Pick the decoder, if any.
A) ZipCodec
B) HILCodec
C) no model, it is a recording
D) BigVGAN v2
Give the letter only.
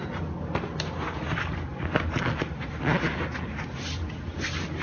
C